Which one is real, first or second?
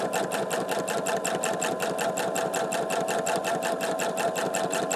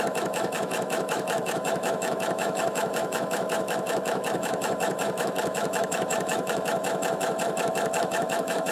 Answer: first